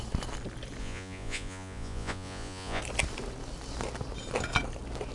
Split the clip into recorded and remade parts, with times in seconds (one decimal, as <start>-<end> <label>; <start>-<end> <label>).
0.0-0.8 recorded; 0.8-2.8 remade; 2.8-5.1 recorded

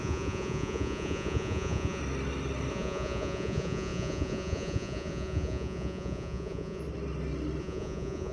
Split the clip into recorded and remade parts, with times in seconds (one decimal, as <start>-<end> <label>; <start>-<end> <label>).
0.0-2.0 remade; 2.0-2.7 recorded; 2.7-6.8 remade; 6.8-7.6 recorded; 7.6-8.3 remade

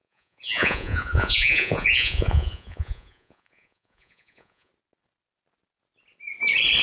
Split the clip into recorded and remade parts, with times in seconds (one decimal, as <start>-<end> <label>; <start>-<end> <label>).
0.0-4.7 remade; 4.7-6.8 recorded

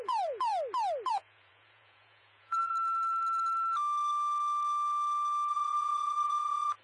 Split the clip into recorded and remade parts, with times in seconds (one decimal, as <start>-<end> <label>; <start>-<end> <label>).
0.0-0.5 remade; 0.5-1.1 recorded; 1.1-2.7 remade; 2.7-5.5 recorded; 5.5-6.8 remade

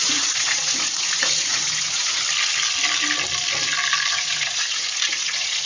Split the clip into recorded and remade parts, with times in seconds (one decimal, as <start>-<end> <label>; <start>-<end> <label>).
0.0-2.2 remade; 2.2-4.1 recorded; 4.1-5.7 remade

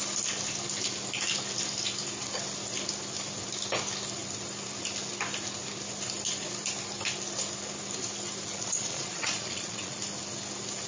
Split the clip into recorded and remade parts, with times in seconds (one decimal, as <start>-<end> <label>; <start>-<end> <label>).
0.0-8.5 recorded; 8.5-10.0 remade; 10.0-10.9 recorded